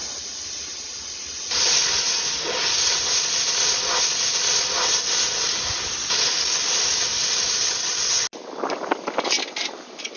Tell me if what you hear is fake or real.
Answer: real